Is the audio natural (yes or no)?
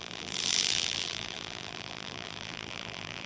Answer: no